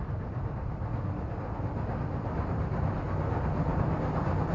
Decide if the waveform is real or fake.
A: real